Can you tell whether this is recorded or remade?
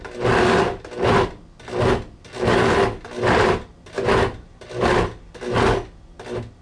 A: recorded